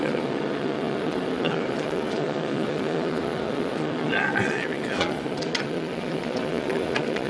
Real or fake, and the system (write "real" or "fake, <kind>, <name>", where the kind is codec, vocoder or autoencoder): fake, vocoder, Vocos